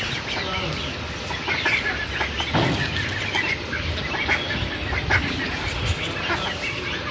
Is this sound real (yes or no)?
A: yes